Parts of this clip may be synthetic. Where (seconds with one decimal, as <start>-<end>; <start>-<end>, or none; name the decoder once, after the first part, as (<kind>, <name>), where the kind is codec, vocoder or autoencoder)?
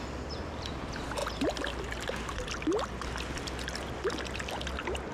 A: none